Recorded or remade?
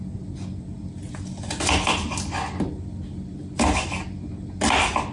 recorded